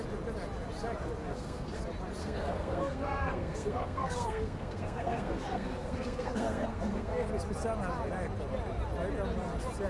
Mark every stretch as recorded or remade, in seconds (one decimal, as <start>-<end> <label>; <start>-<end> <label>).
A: 0.0-1.3 recorded; 1.3-1.8 remade; 1.8-2.2 recorded; 2.2-7.3 remade; 7.3-9.9 recorded